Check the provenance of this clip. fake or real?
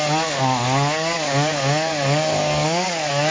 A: fake